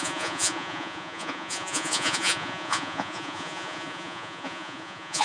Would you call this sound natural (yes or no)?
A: no